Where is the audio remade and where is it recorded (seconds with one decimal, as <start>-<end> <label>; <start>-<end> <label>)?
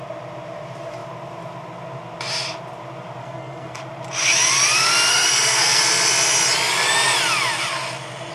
0.0-3.2 recorded; 3.2-3.8 remade; 3.8-5.1 recorded; 5.1-5.8 remade; 5.8-8.3 recorded